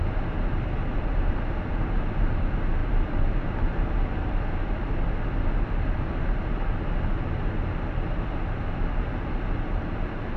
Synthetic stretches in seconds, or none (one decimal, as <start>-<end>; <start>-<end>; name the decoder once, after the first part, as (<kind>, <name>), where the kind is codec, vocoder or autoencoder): none